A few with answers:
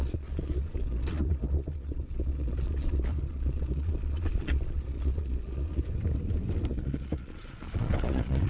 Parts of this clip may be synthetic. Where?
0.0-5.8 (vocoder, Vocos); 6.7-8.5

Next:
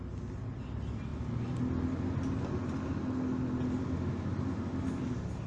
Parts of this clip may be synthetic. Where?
none

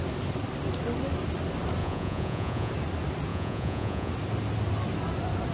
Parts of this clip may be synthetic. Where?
1.8-2.7 (vocoder, Vocos); 3.3-4.1

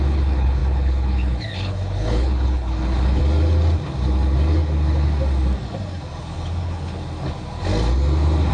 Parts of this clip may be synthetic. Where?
0.0-3.2 (codec, HILCodec); 6.2-7.0

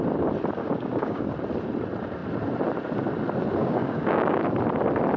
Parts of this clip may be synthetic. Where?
0.6-1.3 (codec, DAC); 3.6-4.5

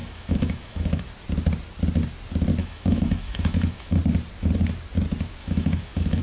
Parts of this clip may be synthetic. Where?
0.0-1.0 (autoencoder, DAC-VAE); 2.6-4.0; 5.4-6.2

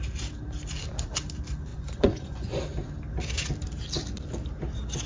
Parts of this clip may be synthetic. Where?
1.7-2.6 (vocoder, Vocos)

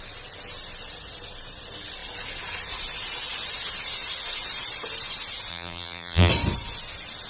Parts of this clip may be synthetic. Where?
5.5-6.3 (vocoder, BigVGAN v2)